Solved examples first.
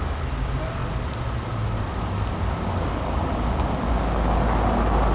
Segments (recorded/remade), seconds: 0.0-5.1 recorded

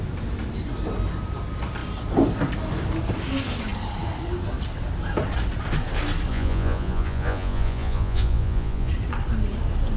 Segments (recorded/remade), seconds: 0.0-6.3 recorded; 6.3-8.9 remade; 8.9-10.0 recorded

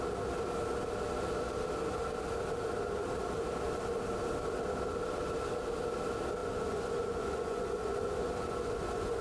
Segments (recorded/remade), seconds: 0.0-6.4 recorded; 6.4-9.2 remade

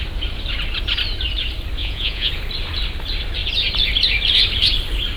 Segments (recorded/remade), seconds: 0.0-1.8 recorded; 1.8-2.3 remade; 2.3-5.2 recorded

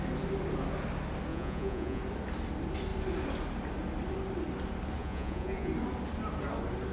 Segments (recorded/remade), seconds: 0.0-1.3 recorded; 1.3-2.0 remade; 2.0-5.0 recorded; 5.0-5.7 remade; 5.7-6.9 recorded

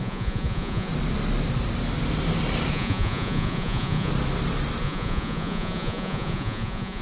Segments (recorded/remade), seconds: 0.0-0.9 remade; 0.9-2.7 recorded; 2.7-4.1 remade; 4.1-4.8 recorded; 4.8-7.0 remade